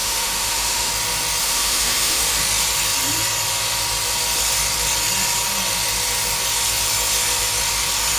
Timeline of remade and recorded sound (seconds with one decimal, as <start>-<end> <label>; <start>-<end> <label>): 0.0-0.9 remade; 0.9-1.4 recorded; 1.4-2.2 remade; 2.2-8.2 recorded

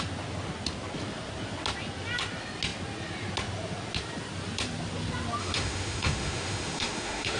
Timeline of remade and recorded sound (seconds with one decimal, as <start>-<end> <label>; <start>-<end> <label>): 0.0-5.4 recorded; 5.4-7.4 remade

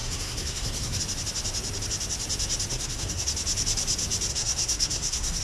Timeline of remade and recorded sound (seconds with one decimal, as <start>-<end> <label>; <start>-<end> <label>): 0.0-1.0 remade; 1.0-2.7 recorded; 2.7-3.3 remade; 3.3-4.3 recorded; 4.3-5.4 remade

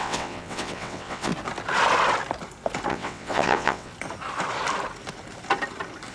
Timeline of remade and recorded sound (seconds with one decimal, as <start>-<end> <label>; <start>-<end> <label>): 0.0-1.3 remade; 1.3-2.9 recorded; 2.9-3.9 remade; 3.9-6.1 recorded

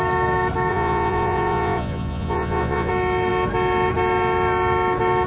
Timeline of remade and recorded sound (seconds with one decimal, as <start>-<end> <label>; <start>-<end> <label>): 0.0-0.7 recorded; 0.7-2.9 remade; 2.9-5.3 recorded

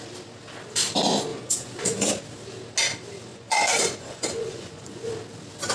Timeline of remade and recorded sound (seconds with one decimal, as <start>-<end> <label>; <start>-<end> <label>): 0.0-1.3 recorded; 1.3-2.1 remade; 2.1-3.3 recorded; 3.3-5.1 remade; 5.1-5.7 recorded

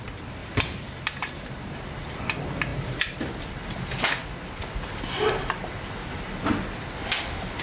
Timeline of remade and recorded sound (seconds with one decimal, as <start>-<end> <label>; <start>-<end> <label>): 0.0-0.4 recorded; 0.4-2.2 remade; 2.2-2.7 recorded; 2.7-3.4 remade; 3.4-7.6 recorded

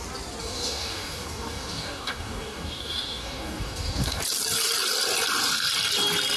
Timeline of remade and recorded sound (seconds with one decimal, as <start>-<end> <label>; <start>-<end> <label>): 0.0-0.4 recorded; 0.4-4.2 remade; 4.2-6.4 recorded